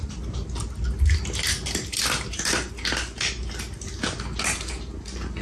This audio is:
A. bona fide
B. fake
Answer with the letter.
A